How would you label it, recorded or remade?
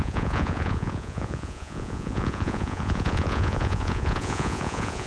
remade